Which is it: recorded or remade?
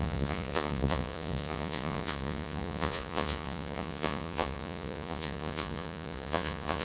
remade